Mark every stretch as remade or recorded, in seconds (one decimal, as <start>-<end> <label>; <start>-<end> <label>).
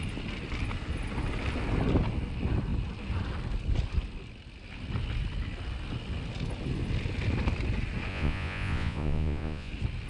0.0-8.1 recorded; 8.1-9.7 remade; 9.7-10.1 recorded